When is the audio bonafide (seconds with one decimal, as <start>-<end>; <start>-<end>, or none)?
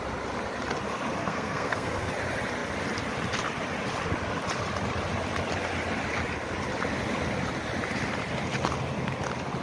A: 0.0-1.2; 2.1-9.6